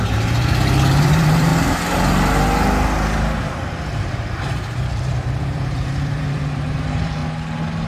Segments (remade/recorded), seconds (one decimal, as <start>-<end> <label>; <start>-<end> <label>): 0.0-1.5 remade; 1.5-4.0 recorded; 4.0-7.2 remade; 7.2-7.9 recorded